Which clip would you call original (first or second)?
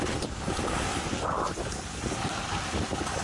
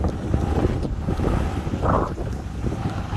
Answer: second